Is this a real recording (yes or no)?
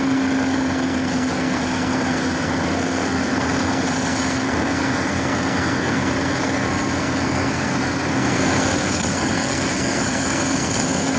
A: no